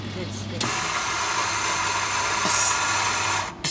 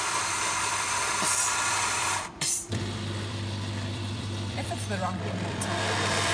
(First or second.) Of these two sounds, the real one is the first